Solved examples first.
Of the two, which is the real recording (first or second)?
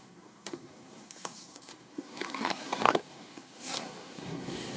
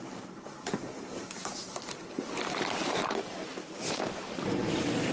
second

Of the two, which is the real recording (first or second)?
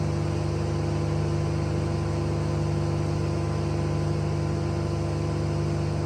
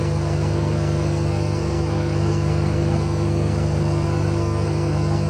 first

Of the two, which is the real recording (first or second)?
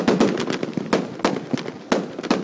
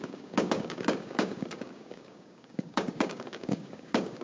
first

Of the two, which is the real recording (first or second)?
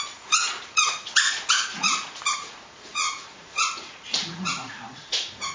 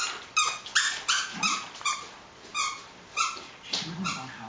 second